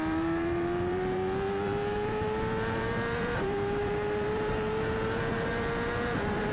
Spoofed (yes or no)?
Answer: yes